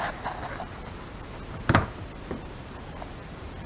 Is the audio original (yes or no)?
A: yes